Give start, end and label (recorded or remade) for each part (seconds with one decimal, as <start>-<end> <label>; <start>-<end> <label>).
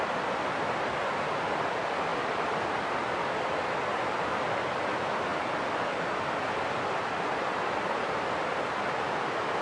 0.0-9.6 recorded